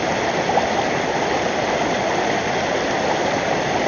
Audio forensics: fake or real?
real